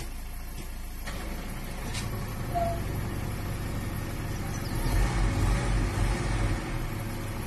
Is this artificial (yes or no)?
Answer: no